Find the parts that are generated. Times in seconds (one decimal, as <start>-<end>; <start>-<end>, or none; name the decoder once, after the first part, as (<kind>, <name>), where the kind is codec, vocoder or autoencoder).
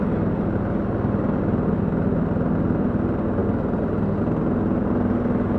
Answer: none